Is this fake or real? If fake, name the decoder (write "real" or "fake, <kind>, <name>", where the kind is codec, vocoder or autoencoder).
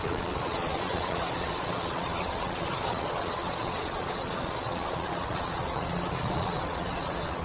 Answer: fake, vocoder, Vocos